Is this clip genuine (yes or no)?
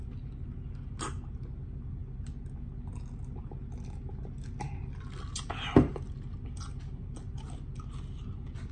yes